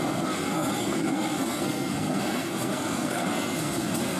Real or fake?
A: fake